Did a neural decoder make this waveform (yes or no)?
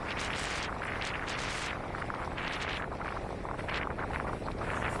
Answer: no